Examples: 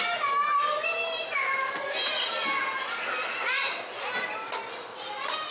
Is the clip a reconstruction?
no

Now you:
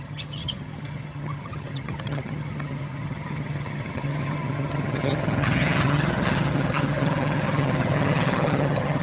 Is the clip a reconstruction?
yes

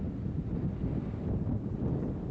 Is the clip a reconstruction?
no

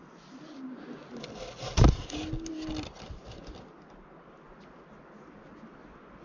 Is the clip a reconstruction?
no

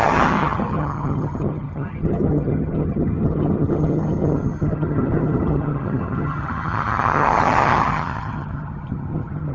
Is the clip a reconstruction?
yes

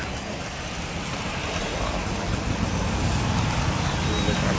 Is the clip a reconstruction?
no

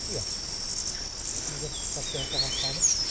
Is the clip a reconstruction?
no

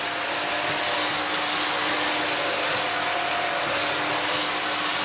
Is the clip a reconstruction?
no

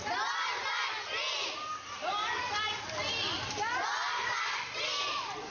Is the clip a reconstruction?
no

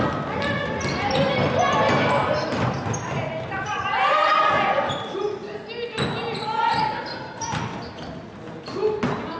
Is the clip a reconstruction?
no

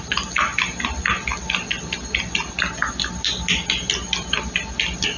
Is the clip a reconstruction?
no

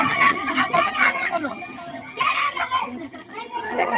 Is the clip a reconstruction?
yes